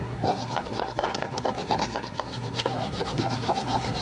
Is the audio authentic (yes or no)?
no